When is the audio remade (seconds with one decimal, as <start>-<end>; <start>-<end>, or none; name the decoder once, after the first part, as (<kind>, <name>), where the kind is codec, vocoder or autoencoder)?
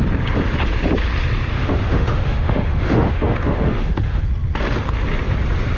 1.5-4.2 (autoencoder, DAC-VAE)